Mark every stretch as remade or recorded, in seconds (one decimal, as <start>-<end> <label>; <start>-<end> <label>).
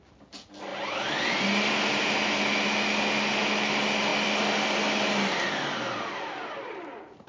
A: 0.0-7.3 recorded